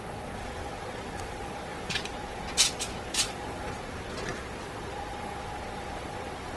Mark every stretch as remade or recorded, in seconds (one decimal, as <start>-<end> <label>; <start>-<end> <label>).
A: 0.0-6.6 remade